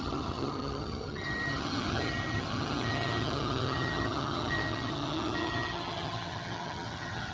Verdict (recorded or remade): remade